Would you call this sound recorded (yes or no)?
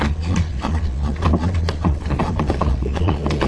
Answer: no